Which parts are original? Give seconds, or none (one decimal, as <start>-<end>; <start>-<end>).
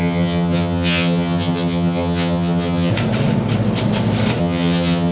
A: 2.9-4.4